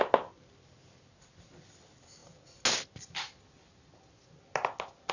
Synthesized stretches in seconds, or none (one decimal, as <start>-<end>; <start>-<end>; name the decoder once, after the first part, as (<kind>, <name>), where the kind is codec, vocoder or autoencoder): none

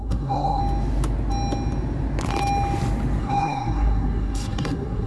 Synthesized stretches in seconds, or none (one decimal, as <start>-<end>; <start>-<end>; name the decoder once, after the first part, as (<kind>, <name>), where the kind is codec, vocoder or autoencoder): 0.0-0.6 (codec, SNAC); 3.2-5.1

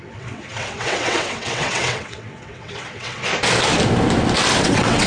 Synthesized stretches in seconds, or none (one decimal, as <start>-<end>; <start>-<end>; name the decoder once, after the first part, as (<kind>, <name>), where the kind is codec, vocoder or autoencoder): 0.0-3.3 (vocoder, WaveNeXt); 4.6-5.1

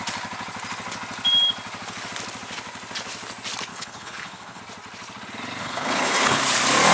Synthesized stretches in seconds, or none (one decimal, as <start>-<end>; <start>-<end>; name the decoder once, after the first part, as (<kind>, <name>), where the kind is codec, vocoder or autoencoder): 3.7-4.6 (codec, HILCodec); 5.6-6.4

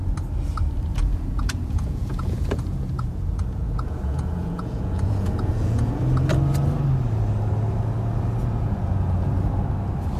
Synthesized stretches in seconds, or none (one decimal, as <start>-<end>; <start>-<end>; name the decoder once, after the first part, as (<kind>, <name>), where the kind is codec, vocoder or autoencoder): 0.9-6.0 (vocoder, Vocos); 8.4-9.3

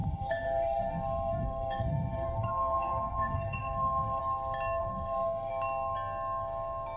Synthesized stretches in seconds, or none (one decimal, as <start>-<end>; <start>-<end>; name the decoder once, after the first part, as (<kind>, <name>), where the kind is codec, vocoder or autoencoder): 0.0-4.2 (codec, SNAC); 4.8-5.5

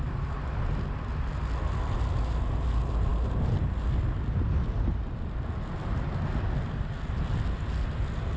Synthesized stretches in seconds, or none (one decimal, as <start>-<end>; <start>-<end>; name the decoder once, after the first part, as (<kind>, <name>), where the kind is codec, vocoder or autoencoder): none